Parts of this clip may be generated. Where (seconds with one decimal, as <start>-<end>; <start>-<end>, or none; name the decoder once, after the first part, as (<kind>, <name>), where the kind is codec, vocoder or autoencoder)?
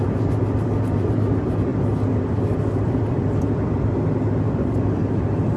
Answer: 0.0-5.6 (vocoder, BigVGAN v2)